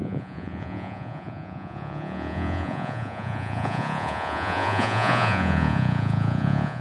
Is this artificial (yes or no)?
yes